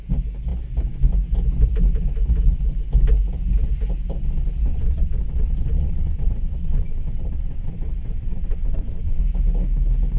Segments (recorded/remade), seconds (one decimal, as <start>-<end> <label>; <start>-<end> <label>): 0.0-4.7 recorded; 4.7-9.2 remade; 9.2-10.2 recorded